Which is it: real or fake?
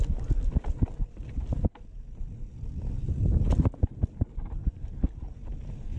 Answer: real